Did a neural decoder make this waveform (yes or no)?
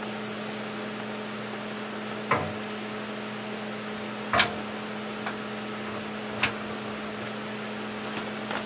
no